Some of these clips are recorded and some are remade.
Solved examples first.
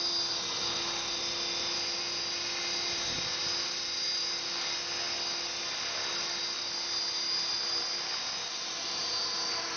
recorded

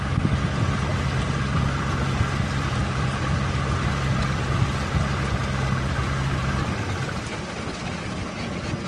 recorded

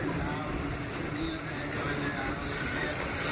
remade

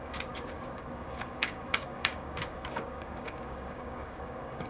remade